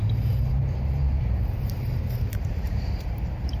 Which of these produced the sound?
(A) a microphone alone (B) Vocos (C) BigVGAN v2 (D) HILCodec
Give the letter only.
C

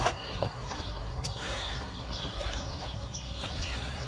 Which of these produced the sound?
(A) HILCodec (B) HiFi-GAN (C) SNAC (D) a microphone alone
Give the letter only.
C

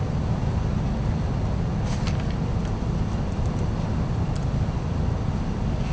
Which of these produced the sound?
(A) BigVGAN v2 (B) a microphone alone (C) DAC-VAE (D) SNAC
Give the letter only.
B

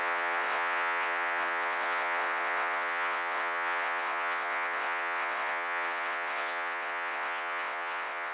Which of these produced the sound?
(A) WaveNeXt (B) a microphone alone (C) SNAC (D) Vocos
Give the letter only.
A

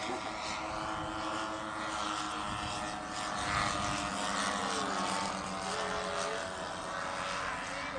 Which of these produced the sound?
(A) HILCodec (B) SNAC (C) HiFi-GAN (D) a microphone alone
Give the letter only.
D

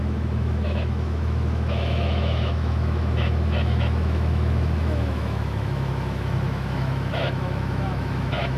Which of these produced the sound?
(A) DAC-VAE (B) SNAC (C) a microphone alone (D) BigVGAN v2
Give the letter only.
A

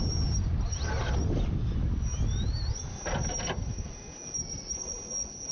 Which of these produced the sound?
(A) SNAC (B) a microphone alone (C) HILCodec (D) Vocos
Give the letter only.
B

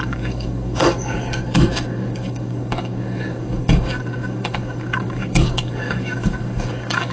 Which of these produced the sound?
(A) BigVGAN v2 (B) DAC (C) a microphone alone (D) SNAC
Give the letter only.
B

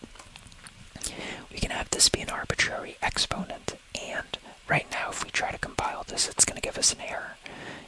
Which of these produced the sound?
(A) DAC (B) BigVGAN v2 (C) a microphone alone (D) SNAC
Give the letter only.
B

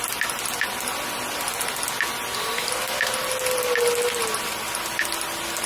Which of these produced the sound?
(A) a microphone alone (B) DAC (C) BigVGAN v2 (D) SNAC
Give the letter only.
A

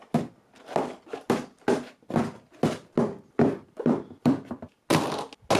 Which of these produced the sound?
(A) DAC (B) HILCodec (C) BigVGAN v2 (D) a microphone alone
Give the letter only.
D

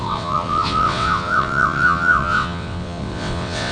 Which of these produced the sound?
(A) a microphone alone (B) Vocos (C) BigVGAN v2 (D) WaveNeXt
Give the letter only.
D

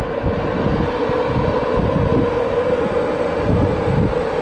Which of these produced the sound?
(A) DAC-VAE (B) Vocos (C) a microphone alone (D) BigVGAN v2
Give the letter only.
C